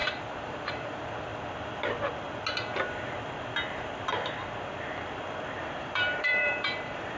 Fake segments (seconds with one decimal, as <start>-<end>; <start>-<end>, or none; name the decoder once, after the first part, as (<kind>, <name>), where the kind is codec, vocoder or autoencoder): 0.0-1.3 (vocoder, BigVGAN v2); 5.6-7.2